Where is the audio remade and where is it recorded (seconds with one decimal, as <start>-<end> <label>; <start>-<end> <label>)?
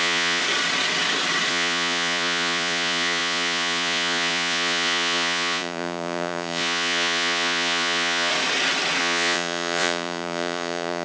0.0-0.4 remade; 0.4-1.5 recorded; 1.5-8.3 remade; 8.3-9.0 recorded; 9.0-11.0 remade